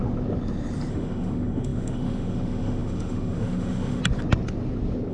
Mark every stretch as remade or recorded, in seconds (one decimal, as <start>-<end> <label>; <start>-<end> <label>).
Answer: 0.0-0.9 recorded; 0.9-4.0 remade; 4.0-5.1 recorded